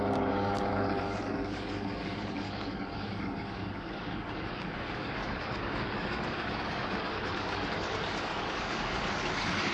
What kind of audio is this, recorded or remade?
remade